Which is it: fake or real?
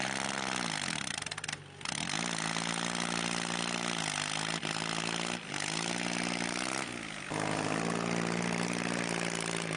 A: real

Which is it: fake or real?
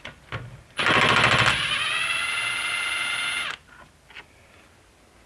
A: real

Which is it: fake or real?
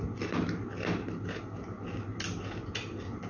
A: real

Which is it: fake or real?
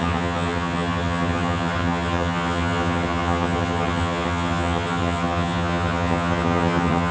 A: fake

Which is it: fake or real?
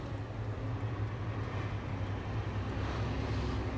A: real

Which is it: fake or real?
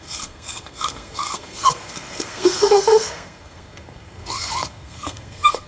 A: fake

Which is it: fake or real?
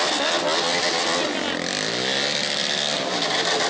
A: real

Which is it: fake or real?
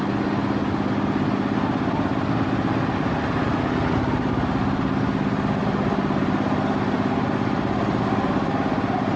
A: real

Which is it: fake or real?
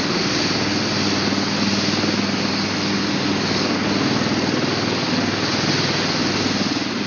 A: real